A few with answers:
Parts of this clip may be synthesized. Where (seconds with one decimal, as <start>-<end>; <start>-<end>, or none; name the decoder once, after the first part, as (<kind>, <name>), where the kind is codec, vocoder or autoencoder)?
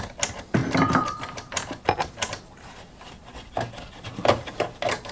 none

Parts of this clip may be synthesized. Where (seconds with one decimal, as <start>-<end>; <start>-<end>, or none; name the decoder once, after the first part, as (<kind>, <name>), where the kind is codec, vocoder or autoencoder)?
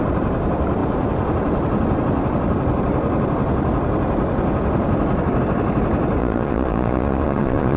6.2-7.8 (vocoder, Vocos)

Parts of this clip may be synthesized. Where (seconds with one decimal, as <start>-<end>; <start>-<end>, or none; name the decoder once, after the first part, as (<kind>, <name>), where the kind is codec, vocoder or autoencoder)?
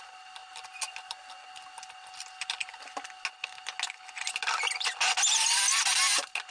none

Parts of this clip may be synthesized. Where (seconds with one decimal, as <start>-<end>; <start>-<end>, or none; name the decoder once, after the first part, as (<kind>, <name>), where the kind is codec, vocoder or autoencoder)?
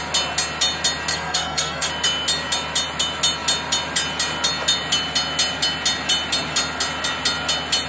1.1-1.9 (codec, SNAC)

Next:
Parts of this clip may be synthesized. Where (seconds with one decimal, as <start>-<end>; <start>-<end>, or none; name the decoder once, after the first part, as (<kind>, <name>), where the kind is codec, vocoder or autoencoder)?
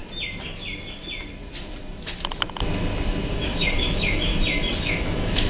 3.3-4.3 (autoencoder, DAC-VAE); 4.8-5.5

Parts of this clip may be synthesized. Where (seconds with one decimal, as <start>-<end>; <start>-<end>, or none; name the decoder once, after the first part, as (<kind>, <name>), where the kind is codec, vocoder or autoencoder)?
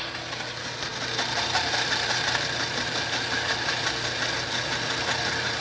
none